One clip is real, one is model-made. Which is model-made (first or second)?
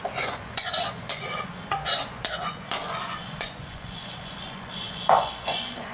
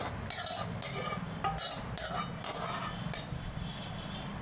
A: first